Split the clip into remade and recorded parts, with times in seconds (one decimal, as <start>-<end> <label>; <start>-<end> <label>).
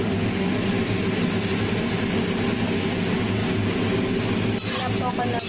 0.0-5.5 recorded